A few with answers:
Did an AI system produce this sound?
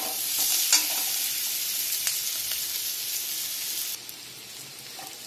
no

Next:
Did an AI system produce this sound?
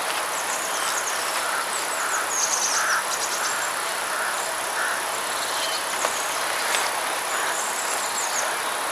no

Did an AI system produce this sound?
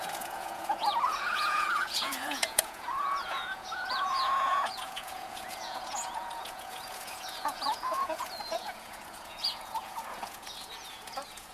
yes